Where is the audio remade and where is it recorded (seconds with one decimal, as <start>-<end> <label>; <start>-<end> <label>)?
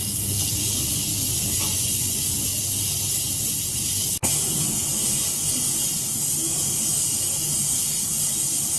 0.0-1.5 recorded; 1.5-2.2 remade; 2.2-8.8 recorded